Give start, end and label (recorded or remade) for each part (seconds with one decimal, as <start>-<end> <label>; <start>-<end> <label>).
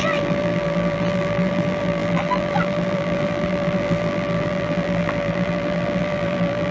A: 0.0-6.7 remade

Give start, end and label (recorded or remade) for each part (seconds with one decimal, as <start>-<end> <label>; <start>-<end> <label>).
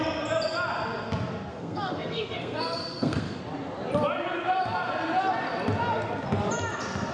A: 0.0-1.5 recorded; 1.5-3.4 remade; 3.4-7.1 recorded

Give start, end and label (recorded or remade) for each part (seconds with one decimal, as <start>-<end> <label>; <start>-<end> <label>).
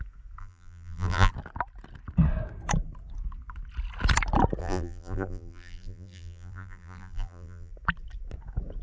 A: 0.0-0.4 recorded; 0.4-1.3 remade; 1.3-4.6 recorded; 4.6-7.7 remade; 7.7-8.8 recorded